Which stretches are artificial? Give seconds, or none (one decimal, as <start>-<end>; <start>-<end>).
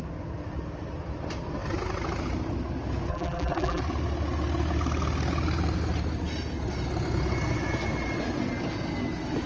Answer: 3.1-3.8